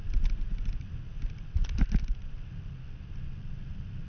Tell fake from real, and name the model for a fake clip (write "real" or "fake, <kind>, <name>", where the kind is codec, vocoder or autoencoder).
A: real